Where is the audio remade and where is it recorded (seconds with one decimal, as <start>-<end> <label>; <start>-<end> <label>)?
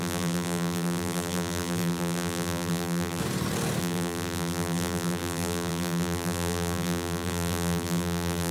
0.0-3.2 remade; 3.2-3.8 recorded; 3.8-8.5 remade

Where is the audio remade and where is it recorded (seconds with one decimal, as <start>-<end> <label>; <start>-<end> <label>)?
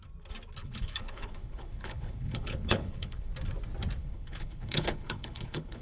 0.0-0.6 recorded; 0.6-3.3 remade; 3.3-4.0 recorded; 4.0-5.8 remade